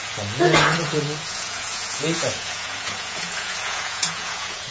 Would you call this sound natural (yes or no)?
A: no